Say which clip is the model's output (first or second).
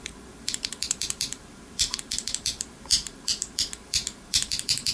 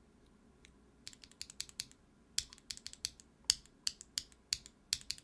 first